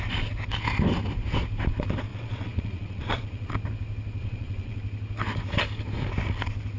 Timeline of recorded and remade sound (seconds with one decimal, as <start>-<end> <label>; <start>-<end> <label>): 0.0-2.1 recorded; 2.1-3.5 remade; 3.5-4.2 recorded; 4.2-4.8 remade; 4.8-6.8 recorded